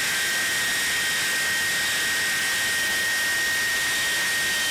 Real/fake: real